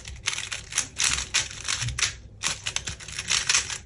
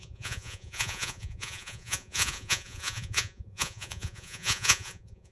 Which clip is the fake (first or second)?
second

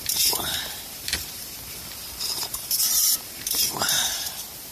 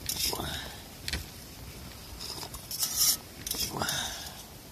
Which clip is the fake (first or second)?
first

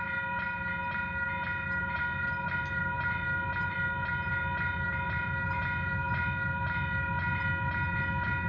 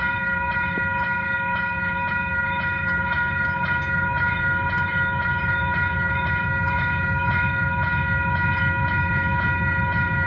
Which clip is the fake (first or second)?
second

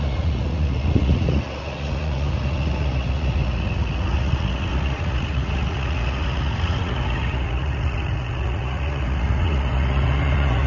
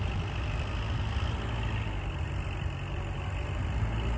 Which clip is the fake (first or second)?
first